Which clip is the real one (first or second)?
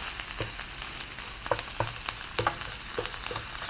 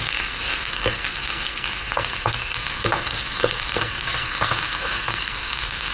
first